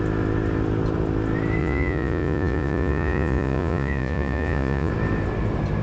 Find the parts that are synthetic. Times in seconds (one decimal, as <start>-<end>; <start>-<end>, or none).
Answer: 1.6-4.9